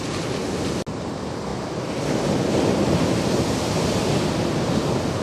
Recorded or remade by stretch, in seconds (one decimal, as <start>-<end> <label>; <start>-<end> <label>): 0.0-5.2 recorded